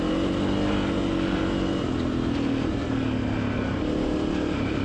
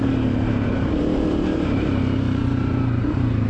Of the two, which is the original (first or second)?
first